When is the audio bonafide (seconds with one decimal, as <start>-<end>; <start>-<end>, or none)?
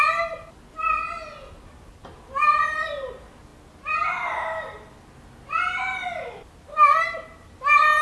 0.0-8.0